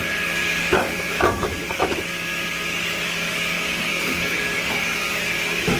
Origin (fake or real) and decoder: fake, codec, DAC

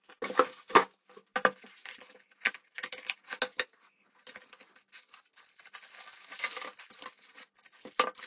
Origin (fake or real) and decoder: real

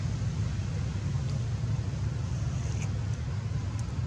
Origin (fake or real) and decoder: real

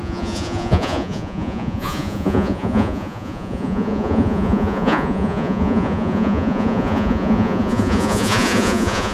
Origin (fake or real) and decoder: fake, vocoder, Vocos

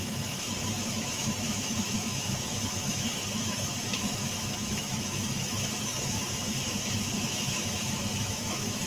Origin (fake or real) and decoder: fake, autoencoder, DAC-VAE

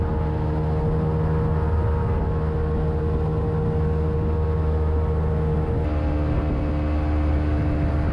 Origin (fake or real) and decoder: real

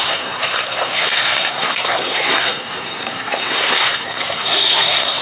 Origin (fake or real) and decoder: fake, codec, SNAC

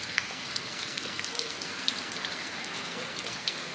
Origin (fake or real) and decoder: fake, codec, SNAC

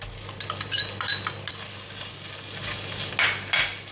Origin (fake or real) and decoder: real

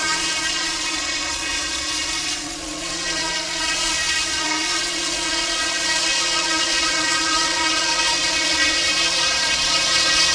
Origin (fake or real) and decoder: fake, vocoder, Vocos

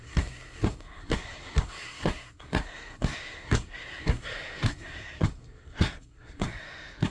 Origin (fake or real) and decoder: fake, codec, SNAC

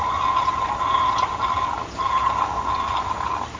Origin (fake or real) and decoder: real